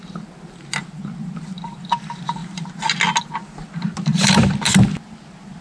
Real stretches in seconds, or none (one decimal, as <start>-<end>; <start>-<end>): 0.0-5.6